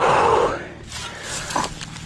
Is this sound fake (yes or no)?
no